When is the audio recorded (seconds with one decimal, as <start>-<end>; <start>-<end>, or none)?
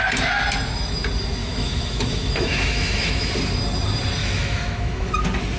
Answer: 0.0-1.4; 3.3-4.2; 5.1-5.6